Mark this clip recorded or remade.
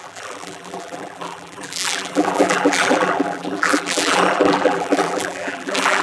remade